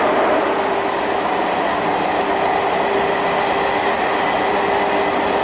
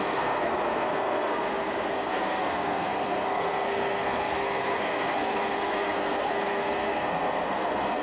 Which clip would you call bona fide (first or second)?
first